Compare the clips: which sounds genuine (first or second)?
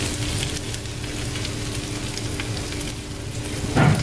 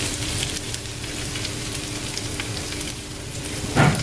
first